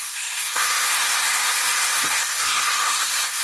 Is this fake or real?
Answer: fake